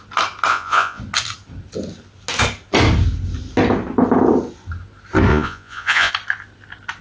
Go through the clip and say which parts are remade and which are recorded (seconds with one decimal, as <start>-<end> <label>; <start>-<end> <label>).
0.0-0.5 recorded; 0.5-1.0 remade; 1.0-5.3 recorded; 5.3-6.1 remade; 6.1-7.0 recorded